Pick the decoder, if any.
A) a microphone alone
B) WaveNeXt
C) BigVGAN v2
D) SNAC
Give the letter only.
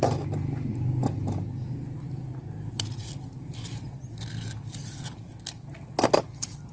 A